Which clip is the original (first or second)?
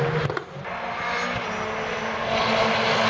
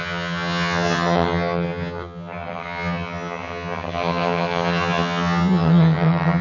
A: first